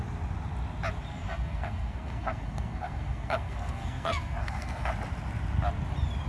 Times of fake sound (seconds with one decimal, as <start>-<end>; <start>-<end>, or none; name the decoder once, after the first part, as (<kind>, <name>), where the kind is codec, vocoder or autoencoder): 1.1-4.9 (codec, SNAC)